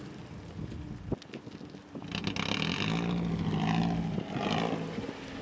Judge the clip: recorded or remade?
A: recorded